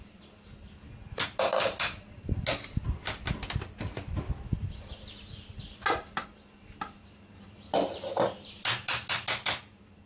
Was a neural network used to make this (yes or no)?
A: no